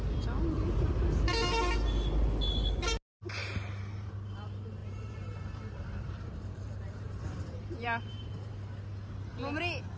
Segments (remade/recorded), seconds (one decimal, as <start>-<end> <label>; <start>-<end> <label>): 0.0-3.4 recorded; 3.4-4.1 remade; 4.1-4.8 recorded; 4.8-8.5 remade; 8.5-10.0 recorded

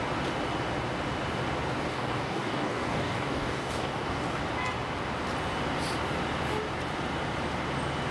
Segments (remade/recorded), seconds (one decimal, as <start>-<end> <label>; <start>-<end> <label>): 0.0-1.9 recorded; 1.9-4.4 remade; 4.4-8.1 recorded